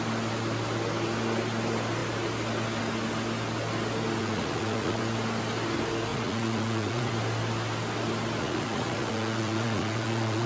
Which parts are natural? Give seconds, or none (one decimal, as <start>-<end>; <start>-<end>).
0.0-4.2; 5.0-6.1; 7.1-8.4